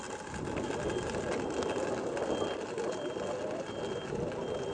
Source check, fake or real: real